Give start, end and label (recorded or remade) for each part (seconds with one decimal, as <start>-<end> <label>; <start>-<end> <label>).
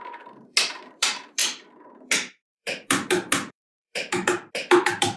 0.0-5.2 remade